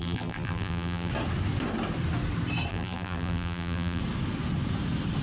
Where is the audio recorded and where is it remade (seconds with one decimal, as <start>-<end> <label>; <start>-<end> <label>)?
0.0-1.1 remade; 1.1-2.7 recorded; 2.7-4.0 remade; 4.0-5.2 recorded